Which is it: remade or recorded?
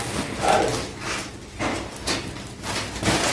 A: recorded